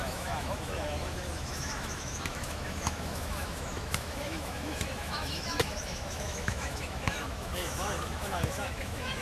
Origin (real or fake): fake